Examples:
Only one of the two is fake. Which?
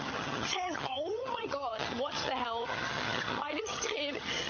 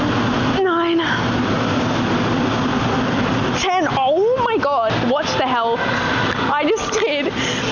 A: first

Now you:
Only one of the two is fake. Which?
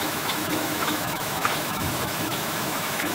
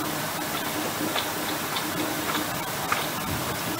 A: first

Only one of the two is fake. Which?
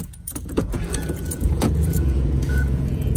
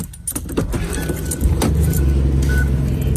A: first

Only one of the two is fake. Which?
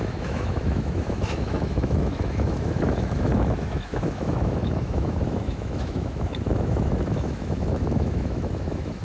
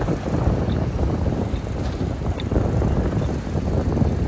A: first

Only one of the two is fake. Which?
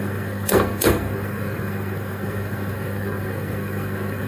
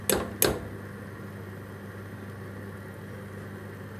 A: first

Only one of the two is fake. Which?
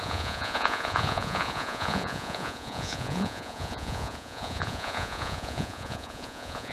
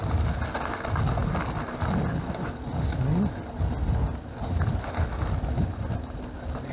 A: first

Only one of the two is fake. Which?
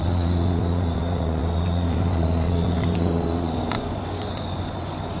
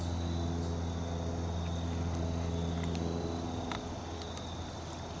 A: first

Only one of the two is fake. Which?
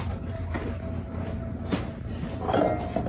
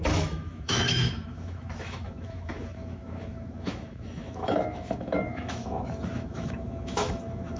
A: second